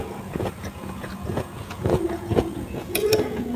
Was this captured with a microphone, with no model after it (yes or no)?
no